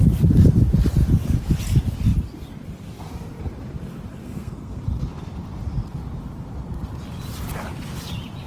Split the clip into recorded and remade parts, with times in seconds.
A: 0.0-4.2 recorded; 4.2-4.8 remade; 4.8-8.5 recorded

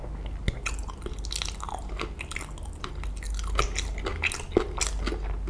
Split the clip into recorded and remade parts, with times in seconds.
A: 0.0-5.5 recorded

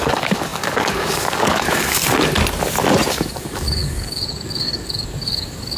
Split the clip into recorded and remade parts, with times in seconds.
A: 0.0-2.0 remade; 2.0-3.1 recorded; 3.1-5.8 remade

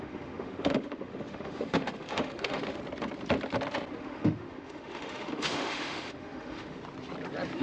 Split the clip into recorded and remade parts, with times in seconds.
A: 0.0-2.8 remade; 2.8-4.0 recorded; 4.0-6.8 remade; 6.8-7.6 recorded

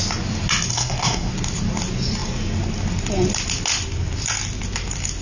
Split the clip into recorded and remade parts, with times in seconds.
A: 0.0-0.7 recorded; 0.7-1.3 remade; 1.3-5.2 recorded

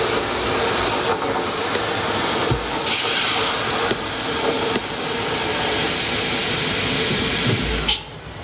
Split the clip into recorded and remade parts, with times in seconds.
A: 0.0-8.4 recorded